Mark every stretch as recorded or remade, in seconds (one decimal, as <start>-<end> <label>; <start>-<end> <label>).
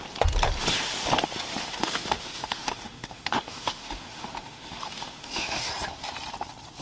0.0-1.6 recorded; 1.6-5.7 remade; 5.7-6.8 recorded